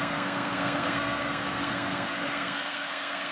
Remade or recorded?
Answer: remade